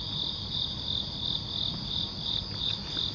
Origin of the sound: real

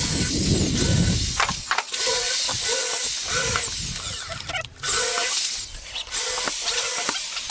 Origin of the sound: real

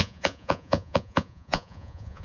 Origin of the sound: fake